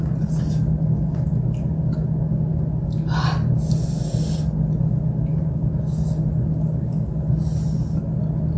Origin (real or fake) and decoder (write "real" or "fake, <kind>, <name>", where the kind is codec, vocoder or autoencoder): real